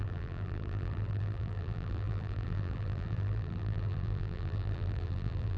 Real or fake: fake